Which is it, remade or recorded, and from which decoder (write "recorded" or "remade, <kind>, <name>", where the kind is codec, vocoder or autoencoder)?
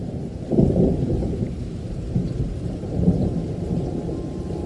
remade, vocoder, BigVGAN v2